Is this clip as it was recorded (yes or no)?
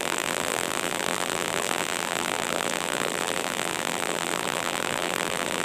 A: no